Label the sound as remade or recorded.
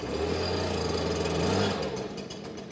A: recorded